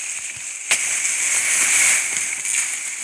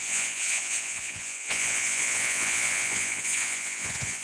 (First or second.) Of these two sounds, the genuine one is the first